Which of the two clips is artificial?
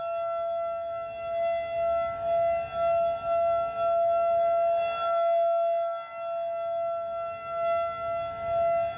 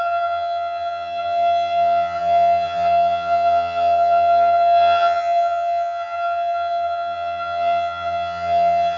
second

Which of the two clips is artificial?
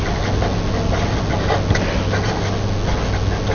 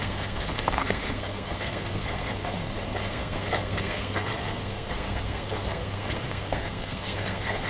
second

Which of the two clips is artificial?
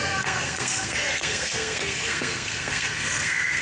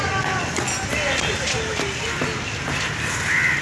first